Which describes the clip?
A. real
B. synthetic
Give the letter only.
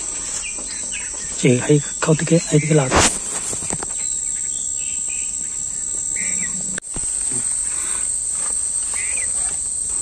A